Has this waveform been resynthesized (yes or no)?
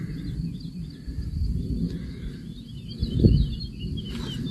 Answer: no